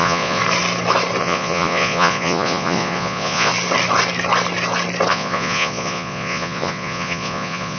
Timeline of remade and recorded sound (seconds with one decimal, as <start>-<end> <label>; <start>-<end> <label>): 0.0-0.4 remade; 0.4-1.2 recorded; 1.2-3.5 remade; 3.5-5.1 recorded; 5.1-7.8 remade